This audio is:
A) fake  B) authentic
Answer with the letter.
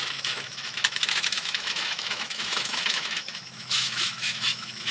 A